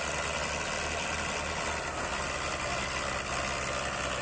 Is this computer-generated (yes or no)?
no